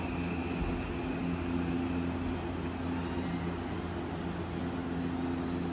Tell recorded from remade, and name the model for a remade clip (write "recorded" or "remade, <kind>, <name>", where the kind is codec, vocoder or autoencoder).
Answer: recorded